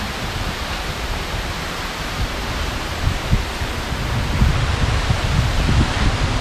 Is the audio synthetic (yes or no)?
no